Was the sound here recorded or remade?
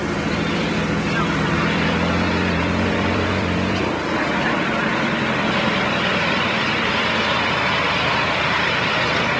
remade